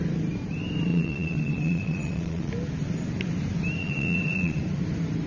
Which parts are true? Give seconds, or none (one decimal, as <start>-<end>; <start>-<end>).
0.0-0.9; 2.5-3.8; 4.6-5.3